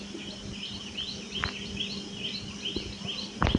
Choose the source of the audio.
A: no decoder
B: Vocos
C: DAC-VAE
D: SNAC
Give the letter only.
A